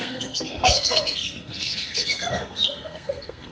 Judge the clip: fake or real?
fake